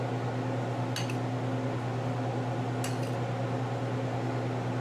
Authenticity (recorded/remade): recorded